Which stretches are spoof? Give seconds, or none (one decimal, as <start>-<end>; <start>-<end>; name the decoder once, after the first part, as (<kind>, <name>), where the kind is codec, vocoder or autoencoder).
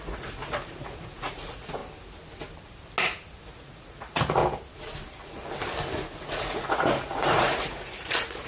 0.0-1.8 (vocoder, Vocos); 3.4-4.4; 5.9-8.5